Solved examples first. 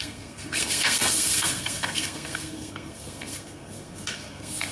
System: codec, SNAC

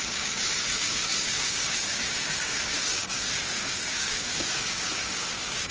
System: codec, DAC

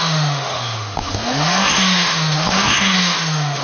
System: autoencoder, DAC-VAE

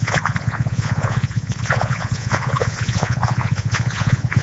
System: vocoder, Vocos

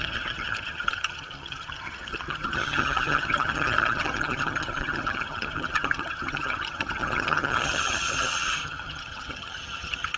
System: vocoder, HiFi-GAN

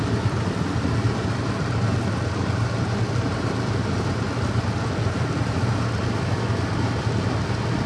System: none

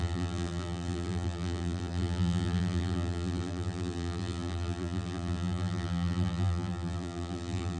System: vocoder, BigVGAN v2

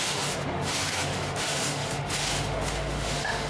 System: autoencoder, DAC-VAE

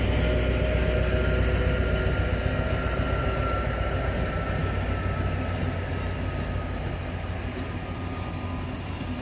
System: none